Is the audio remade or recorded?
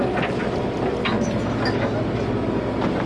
recorded